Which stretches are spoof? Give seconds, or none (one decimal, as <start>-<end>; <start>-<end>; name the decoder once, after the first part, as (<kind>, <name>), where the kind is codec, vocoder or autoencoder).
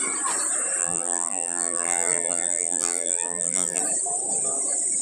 0.8-3.8 (vocoder, BigVGAN v2)